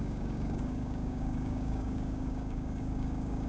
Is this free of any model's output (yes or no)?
no